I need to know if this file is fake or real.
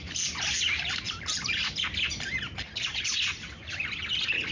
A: real